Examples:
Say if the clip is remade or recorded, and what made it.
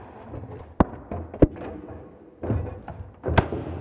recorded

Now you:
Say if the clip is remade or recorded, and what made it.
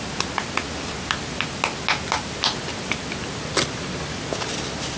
recorded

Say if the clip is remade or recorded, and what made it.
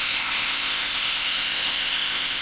remade, codec, ZipCodec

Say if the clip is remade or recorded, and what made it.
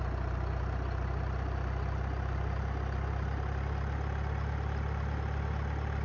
recorded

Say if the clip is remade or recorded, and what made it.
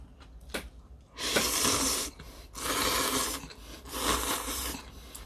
recorded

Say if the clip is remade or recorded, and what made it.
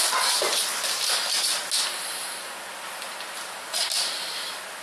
recorded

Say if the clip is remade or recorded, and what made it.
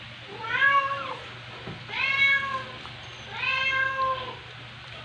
recorded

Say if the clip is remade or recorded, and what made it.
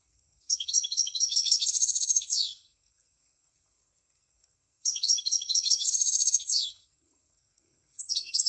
remade, codec, SNAC